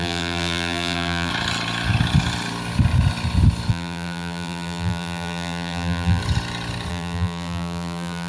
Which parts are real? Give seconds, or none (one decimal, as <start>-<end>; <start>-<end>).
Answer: 1.3-3.7; 6.2-6.9